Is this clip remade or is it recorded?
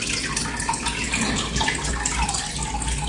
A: recorded